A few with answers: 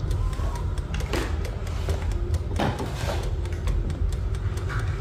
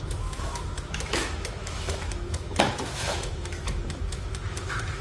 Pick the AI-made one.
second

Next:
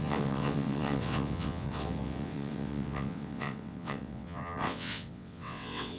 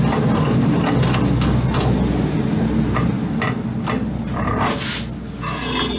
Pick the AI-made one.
first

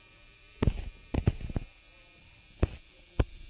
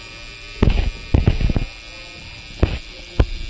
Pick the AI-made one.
first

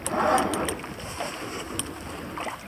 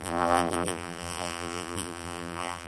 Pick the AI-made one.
second